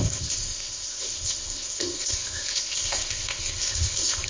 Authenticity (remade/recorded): remade